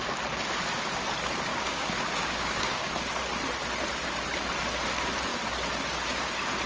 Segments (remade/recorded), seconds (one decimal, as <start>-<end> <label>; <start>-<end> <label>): 0.0-1.5 recorded; 1.5-2.9 remade; 2.9-6.7 recorded